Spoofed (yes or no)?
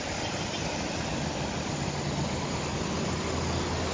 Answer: no